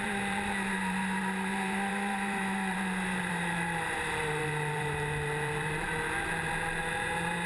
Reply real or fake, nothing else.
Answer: fake